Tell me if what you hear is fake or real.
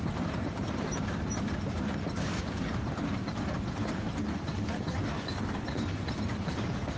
fake